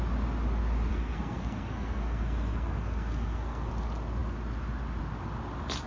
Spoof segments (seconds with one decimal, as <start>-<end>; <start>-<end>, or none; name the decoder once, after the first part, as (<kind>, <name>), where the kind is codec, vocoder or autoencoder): 0.9-3.7 (codec, SNAC)